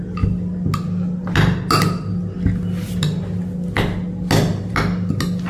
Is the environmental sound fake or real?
real